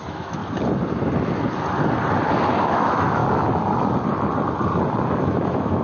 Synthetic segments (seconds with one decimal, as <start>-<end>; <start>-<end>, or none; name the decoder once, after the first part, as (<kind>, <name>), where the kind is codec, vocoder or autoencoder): 0.0-0.4 (autoencoder, DAC-VAE); 2.7-3.2; 5.2-5.8